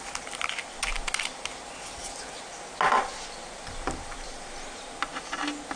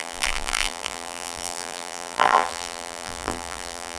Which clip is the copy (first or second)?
second